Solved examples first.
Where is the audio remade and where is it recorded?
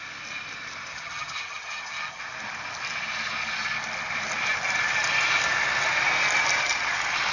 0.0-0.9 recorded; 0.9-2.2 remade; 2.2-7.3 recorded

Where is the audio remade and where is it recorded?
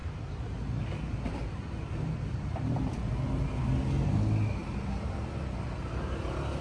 0.0-3.5 remade; 3.5-4.6 recorded; 4.6-5.9 remade; 5.9-6.6 recorded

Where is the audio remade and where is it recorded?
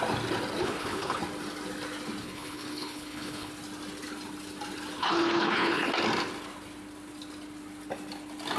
0.0-0.6 recorded; 0.6-1.2 remade; 1.2-2.2 recorded; 2.2-3.5 remade; 3.5-5.0 recorded; 5.0-5.9 remade; 5.9-8.6 recorded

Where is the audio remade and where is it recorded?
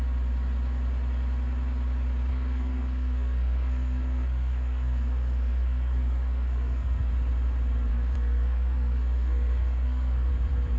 0.0-2.3 recorded; 2.3-7.1 remade; 7.1-7.9 recorded; 7.9-10.3 remade; 10.3-10.8 recorded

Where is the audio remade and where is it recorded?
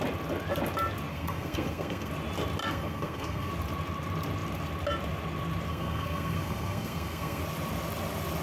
0.0-1.1 recorded; 1.1-2.1 remade; 2.1-2.6 recorded; 2.6-3.5 remade; 3.5-5.7 recorded; 5.7-7.4 remade; 7.4-8.4 recorded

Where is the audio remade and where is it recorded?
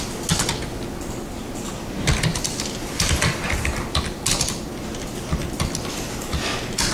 0.0-6.9 recorded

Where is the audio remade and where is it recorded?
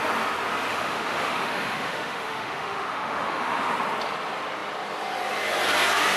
0.0-0.7 recorded; 0.7-3.7 remade; 3.7-6.2 recorded